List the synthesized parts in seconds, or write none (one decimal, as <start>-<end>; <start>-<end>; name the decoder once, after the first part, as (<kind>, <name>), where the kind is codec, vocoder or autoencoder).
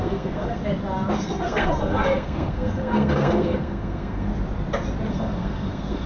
0.0-0.6 (codec, SNAC); 1.2-4.3; 5.1-6.1